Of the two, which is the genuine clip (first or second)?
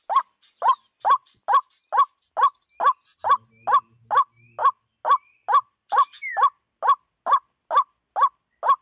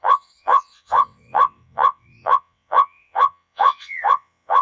first